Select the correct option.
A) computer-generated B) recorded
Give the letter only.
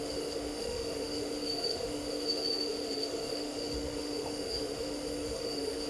A